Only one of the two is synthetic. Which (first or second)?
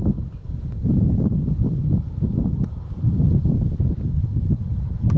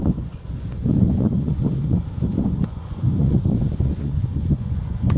second